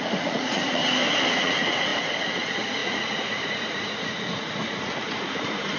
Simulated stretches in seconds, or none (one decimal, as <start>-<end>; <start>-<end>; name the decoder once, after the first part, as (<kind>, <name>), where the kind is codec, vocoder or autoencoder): 0.0-0.8 (vocoder, Vocos); 1.3-5.8